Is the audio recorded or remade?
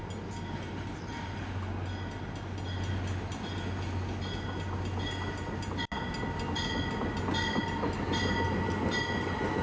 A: recorded